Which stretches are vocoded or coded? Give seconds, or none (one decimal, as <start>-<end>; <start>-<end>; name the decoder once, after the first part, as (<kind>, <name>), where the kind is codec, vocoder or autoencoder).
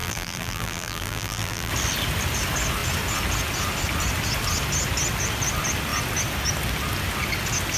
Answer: 0.0-1.7 (vocoder, BigVGAN v2)